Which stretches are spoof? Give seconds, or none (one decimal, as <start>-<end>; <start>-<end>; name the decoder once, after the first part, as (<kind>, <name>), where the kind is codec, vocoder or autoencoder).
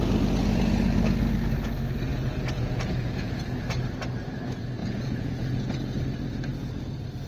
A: 2.1-3.4 (vocoder, Vocos); 4.8-6.0